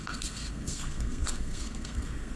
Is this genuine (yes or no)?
no